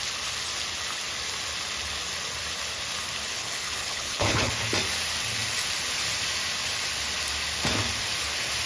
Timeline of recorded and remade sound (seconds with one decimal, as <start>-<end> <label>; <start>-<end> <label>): 0.0-3.3 recorded; 3.3-4.5 remade; 4.5-8.7 recorded